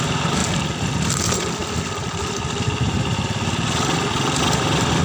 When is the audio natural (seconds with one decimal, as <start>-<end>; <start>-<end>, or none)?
0.0-1.6; 2.3-5.0

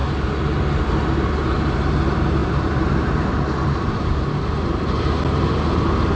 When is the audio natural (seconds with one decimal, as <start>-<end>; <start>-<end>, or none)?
0.0-2.4; 4.3-6.2

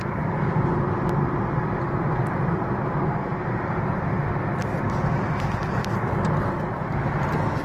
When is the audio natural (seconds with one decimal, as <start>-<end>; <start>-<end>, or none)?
0.0-7.6

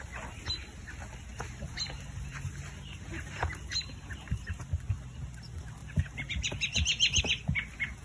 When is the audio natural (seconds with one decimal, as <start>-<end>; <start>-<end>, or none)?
0.0-1.3; 4.8-5.8; 7.2-8.0

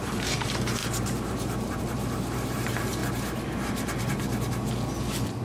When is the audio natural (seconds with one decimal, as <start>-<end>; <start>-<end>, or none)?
3.0-5.4